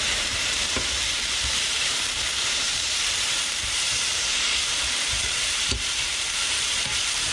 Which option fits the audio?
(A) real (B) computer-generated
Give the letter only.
B